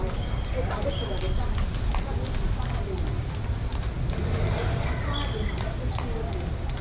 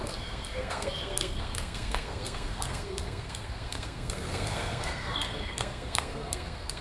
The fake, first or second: second